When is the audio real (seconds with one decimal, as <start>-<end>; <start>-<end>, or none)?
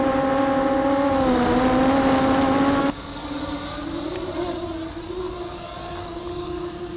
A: 0.0-2.8; 3.4-7.0